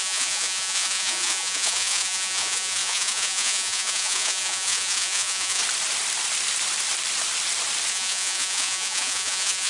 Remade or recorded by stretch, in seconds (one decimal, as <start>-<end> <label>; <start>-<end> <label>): 0.0-5.6 remade; 5.6-7.9 recorded; 7.9-9.7 remade